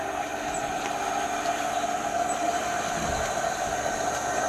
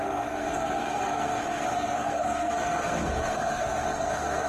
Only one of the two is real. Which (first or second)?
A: first